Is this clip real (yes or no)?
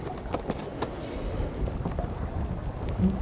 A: yes